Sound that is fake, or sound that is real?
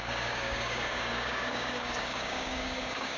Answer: fake